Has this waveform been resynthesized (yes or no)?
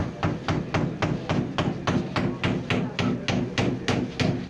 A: no